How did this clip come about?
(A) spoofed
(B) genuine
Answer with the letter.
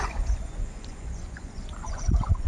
A